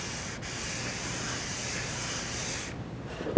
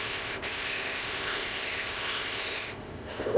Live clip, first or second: first